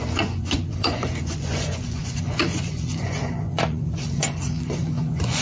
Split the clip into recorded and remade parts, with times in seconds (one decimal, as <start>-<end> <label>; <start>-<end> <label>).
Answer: 0.0-5.4 remade